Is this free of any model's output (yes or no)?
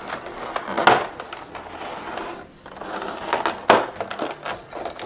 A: yes